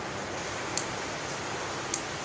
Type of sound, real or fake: fake